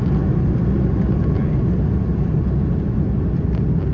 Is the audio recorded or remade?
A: recorded